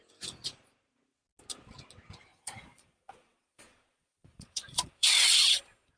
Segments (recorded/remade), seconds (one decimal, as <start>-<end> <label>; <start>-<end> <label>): 0.0-2.3 recorded; 2.3-6.0 remade